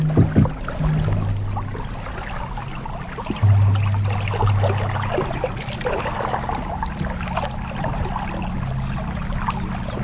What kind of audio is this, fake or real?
real